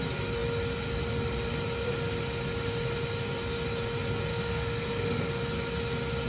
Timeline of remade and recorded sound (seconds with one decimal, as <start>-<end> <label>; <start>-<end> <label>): 0.0-4.3 recorded; 4.3-5.3 remade; 5.3-6.3 recorded